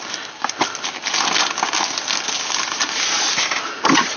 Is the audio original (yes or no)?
yes